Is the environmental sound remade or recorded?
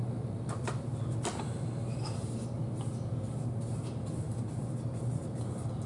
recorded